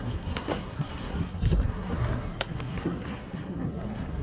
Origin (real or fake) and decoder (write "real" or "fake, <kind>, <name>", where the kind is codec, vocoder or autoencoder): fake, codec, SNAC